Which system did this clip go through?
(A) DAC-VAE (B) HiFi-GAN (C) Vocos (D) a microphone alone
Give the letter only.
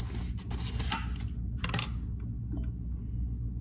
D